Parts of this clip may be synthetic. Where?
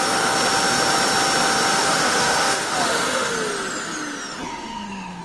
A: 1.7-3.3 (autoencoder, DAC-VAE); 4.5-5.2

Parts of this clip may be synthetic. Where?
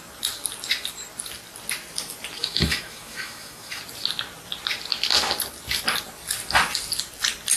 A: 2.4-3.8 (autoencoder, DAC-VAE)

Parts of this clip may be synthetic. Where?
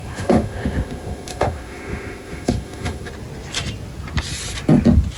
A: 0.0-3.1 (autoencoder, DAC-VAE)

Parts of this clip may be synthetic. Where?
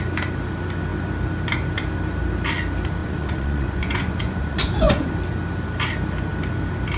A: 3.0-5.1 (vocoder, Vocos)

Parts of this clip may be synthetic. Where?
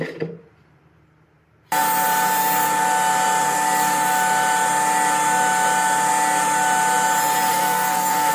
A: 7.5-8.3 (codec, SNAC)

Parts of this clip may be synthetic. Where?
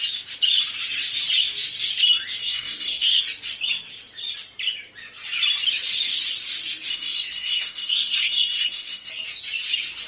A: 2.4-3.2 (codec, SNAC); 6.9-9.1